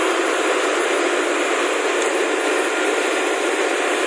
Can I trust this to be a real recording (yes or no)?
yes